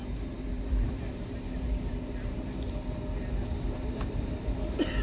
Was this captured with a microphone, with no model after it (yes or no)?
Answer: no